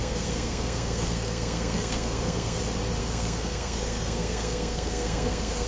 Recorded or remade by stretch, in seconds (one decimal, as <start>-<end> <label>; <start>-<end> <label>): 0.0-2.6 remade; 2.6-3.0 recorded; 3.0-5.7 remade